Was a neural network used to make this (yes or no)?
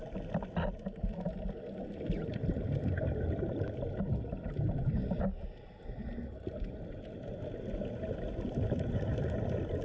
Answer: no